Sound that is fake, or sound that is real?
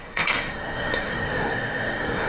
fake